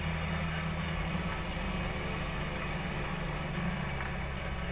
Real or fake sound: real